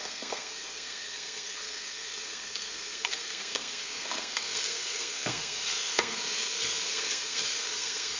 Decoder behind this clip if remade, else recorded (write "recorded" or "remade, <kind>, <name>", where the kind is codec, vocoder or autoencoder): remade, codec, SNAC